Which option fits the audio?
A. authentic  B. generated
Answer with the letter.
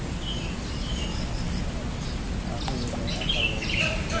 A